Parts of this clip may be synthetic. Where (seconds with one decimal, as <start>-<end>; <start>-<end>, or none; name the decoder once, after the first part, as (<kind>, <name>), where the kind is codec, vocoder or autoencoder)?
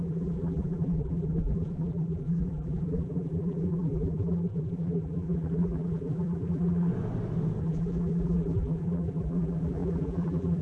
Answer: 0.0-6.9 (vocoder, BigVGAN v2); 7.6-10.6